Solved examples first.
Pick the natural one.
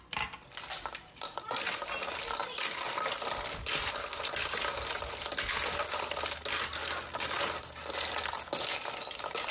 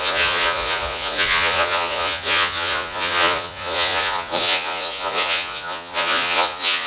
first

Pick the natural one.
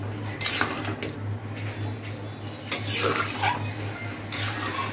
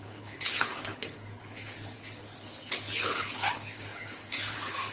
first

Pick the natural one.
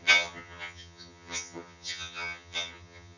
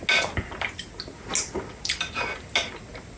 second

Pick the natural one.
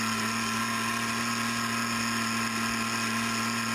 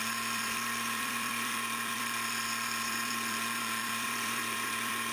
first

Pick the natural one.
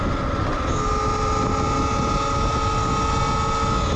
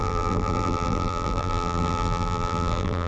first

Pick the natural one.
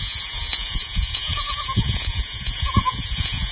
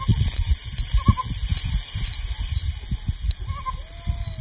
second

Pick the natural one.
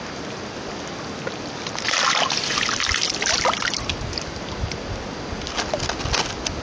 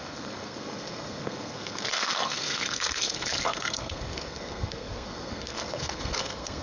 first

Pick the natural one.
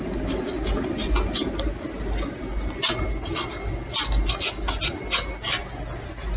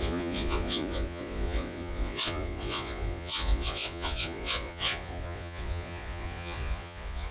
first